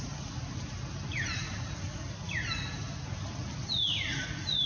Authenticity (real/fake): real